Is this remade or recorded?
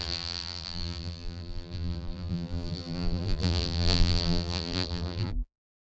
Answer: remade